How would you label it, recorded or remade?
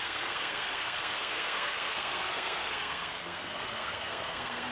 remade